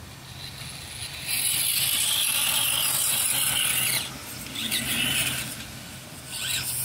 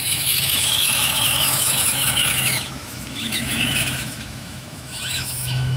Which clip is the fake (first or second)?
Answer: second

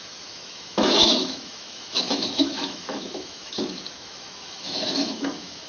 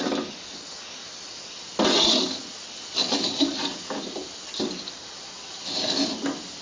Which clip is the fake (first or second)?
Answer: first